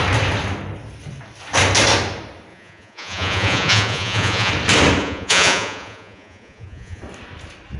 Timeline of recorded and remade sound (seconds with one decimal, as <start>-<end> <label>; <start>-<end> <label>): 0.0-2.5 recorded; 2.5-4.5 remade; 4.5-5.0 recorded; 5.0-7.0 remade; 7.0-7.8 recorded